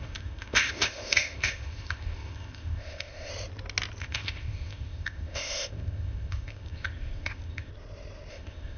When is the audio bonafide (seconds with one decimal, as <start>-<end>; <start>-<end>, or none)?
3.3-4.0; 7.7-8.3